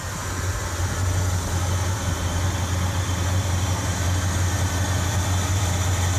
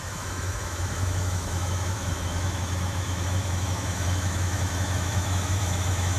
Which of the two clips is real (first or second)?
first